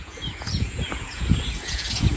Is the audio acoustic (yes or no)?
no